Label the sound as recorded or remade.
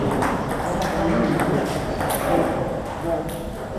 recorded